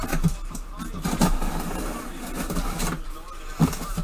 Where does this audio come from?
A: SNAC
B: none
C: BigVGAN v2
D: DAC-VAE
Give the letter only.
B